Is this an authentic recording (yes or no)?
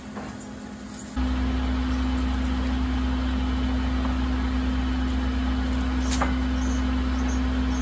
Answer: yes